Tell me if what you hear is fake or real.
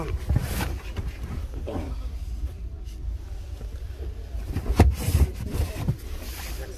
real